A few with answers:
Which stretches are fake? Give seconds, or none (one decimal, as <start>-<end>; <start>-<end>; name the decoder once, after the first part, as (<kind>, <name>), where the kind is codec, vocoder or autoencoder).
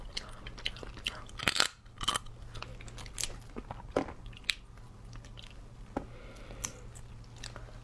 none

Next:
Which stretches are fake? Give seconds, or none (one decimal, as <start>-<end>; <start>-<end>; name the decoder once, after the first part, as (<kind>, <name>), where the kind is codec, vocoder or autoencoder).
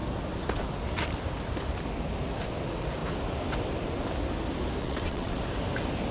4.8-5.4 (vocoder, WaveNeXt)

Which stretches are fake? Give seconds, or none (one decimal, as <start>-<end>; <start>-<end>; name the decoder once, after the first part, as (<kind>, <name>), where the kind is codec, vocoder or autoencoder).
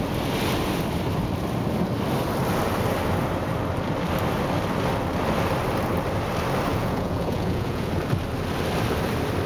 6.7-7.9 (vocoder, Vocos)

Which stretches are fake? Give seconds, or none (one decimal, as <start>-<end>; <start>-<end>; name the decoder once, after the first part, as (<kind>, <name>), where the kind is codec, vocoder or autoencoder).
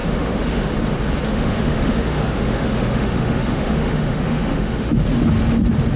0.0-0.7 (autoencoder, DAC-VAE); 1.3-4.9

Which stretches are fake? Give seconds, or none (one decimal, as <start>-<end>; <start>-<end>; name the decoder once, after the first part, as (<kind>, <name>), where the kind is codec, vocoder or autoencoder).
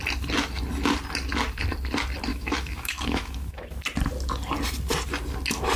2.3-3.8 (autoencoder, DAC-VAE)